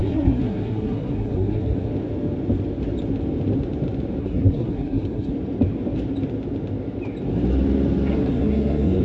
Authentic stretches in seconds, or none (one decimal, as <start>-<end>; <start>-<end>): 1.9-4.2; 5.3-8.1